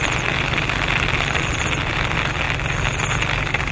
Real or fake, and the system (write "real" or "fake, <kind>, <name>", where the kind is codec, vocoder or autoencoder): real